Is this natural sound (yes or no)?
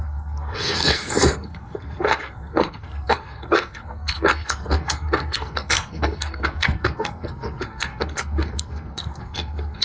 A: no